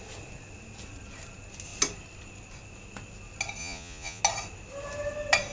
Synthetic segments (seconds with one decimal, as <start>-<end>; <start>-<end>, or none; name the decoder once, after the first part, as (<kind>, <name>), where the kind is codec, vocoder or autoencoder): 3.6-4.2 (vocoder, Vocos)